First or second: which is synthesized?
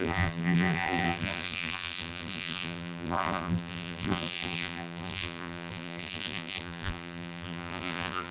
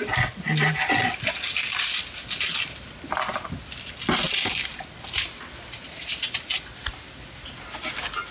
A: first